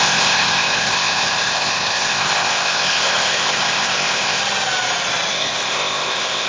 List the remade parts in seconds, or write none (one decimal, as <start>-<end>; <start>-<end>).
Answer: 0.0-4.4; 5.3-6.5

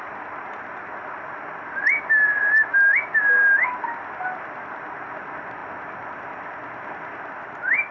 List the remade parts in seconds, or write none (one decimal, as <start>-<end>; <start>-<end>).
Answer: none

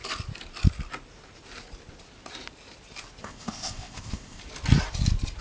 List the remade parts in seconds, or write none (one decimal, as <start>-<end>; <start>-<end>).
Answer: 3.2-4.4

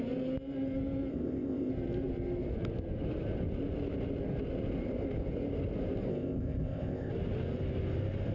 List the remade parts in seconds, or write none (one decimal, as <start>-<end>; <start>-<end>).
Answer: 1.1-1.7; 6.1-7.1

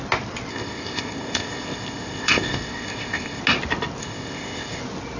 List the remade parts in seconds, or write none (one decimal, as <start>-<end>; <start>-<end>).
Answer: 0.5-3.4; 4.0-4.8

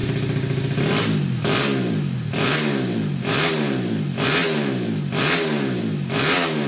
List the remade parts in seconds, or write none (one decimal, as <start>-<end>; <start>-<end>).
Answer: none

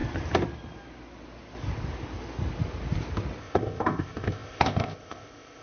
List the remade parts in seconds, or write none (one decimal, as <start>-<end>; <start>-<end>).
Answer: 3.4-5.6